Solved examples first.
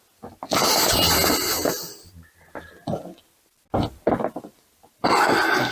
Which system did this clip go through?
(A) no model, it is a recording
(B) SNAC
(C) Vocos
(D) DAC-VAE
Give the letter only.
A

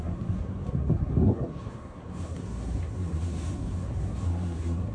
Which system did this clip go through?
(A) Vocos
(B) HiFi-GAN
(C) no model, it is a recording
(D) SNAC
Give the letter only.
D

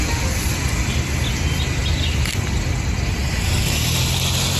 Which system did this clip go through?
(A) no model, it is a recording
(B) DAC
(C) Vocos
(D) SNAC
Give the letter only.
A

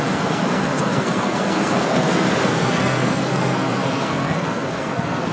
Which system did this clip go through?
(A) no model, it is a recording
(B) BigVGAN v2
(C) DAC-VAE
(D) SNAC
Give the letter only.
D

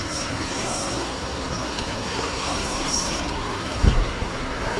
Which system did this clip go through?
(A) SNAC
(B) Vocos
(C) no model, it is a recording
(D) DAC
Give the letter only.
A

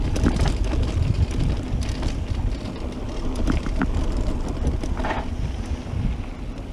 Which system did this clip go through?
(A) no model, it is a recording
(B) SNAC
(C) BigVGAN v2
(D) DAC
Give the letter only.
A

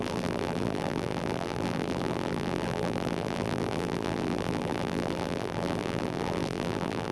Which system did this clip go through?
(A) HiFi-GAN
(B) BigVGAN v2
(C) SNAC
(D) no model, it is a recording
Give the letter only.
B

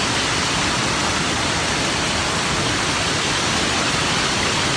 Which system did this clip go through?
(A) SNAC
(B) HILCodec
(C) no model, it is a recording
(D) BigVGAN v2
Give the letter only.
C